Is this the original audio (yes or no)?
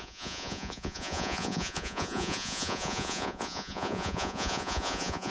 no